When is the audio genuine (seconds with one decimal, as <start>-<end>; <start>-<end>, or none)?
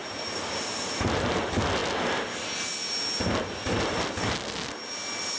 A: 1.4-5.4